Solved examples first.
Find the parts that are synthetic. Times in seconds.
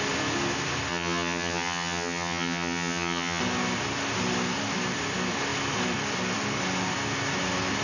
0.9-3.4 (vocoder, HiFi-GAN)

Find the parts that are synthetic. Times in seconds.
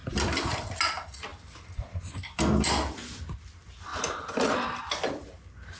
0.0-0.7 (vocoder, BigVGAN v2); 1.3-2.5; 3.9-4.8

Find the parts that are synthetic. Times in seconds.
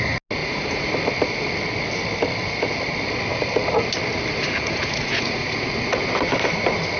0.4-0.9 (vocoder, Vocos); 4.3-5.7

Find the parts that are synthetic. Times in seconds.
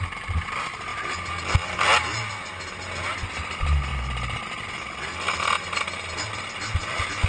none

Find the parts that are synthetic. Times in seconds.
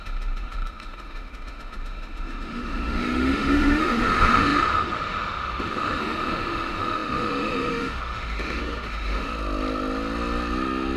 0.0-9.3 (autoencoder, DAC-VAE)